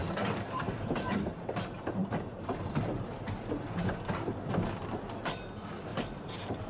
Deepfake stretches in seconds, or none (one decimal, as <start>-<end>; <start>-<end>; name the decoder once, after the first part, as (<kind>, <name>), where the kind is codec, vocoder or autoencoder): 0.0-1.4 (vocoder, BigVGAN v2); 2.0-3.9; 5.9-6.7